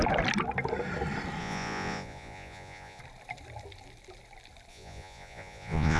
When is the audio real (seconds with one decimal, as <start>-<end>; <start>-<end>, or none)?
0.0-1.4; 3.0-4.7